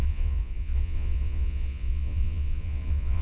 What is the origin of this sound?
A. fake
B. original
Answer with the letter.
A